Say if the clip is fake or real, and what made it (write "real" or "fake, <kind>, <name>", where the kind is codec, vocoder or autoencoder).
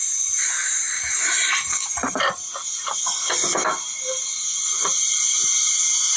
fake, vocoder, BigVGAN v2